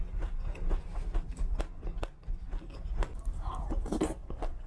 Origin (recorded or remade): recorded